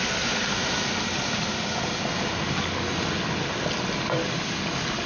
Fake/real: real